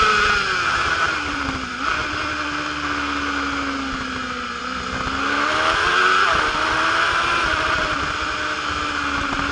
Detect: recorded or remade recorded